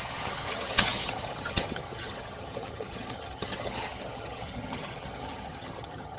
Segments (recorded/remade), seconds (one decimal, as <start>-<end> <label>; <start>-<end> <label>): 0.0-6.2 remade